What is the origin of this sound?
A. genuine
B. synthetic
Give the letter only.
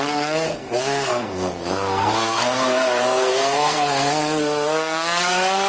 B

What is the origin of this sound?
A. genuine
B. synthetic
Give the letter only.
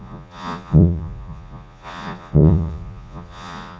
B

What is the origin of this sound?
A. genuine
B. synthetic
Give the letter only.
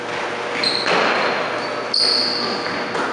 A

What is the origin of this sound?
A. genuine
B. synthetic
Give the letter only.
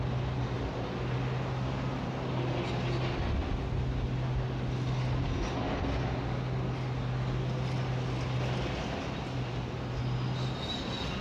A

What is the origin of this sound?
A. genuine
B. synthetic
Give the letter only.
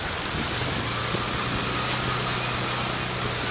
A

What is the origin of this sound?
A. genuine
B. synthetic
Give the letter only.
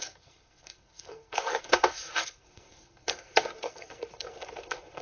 B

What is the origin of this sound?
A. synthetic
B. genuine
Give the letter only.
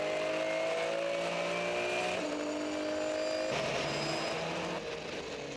B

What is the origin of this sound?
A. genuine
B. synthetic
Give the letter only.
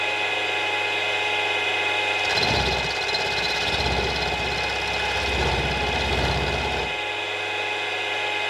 A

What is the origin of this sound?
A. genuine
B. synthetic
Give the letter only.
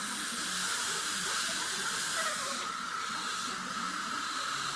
A